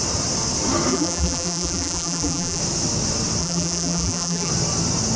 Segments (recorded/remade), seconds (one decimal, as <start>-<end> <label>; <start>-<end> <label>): 0.0-0.9 recorded; 0.9-2.6 remade; 2.6-3.4 recorded; 3.4-4.5 remade; 4.5-5.2 recorded